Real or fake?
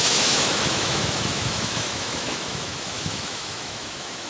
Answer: fake